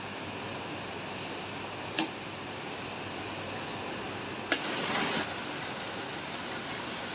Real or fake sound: real